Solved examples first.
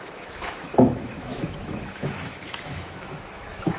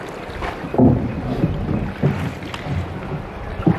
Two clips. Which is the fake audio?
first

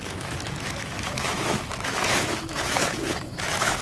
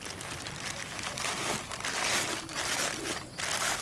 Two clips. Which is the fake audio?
first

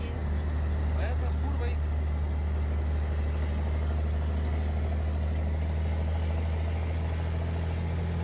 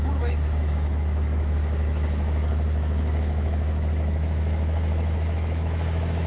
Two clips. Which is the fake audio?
second